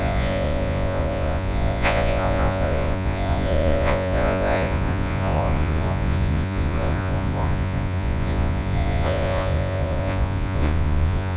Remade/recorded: remade